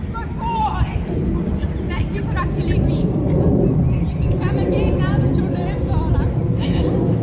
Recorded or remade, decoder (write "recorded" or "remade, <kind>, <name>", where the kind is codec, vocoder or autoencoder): recorded